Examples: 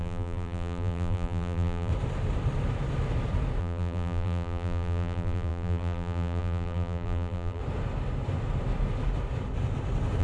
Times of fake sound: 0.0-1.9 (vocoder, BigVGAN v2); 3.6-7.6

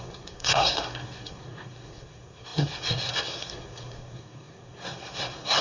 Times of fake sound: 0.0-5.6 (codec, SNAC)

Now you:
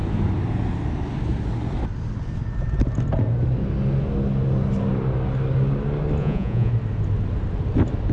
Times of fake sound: 6.2-6.7 (vocoder, Vocos)

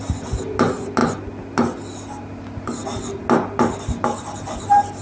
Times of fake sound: none